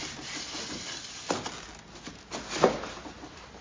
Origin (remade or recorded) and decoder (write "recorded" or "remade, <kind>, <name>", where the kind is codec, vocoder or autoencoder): recorded